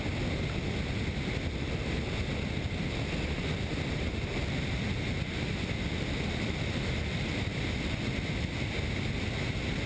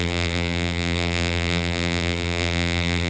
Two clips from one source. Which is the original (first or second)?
first